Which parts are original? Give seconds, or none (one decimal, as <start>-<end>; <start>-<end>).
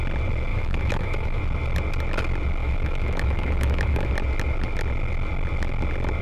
0.0-0.5; 1.4-2.6; 4.1-6.2